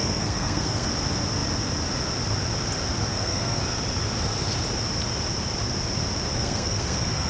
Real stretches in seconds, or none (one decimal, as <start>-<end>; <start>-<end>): 0.9-3.1; 3.6-6.3